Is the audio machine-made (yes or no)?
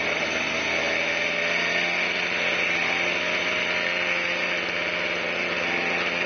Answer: no